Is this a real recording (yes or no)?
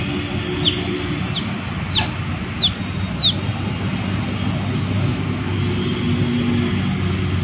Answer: yes